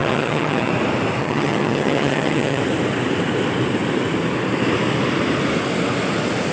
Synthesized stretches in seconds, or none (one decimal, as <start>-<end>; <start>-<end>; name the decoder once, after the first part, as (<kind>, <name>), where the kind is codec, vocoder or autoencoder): 0.0-0.7 (vocoder, HiFi-GAN); 1.2-2.6